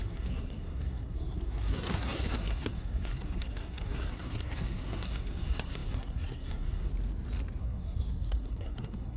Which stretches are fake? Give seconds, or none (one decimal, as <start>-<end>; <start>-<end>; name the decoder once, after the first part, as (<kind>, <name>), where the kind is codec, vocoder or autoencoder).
0.0-6.9 (codec, SNAC); 7.6-9.2